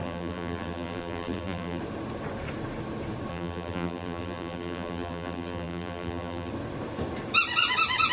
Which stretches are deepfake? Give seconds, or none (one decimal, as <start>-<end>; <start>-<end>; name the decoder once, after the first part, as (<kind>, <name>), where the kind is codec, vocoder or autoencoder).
0.0-1.8 (vocoder, BigVGAN v2); 3.3-6.5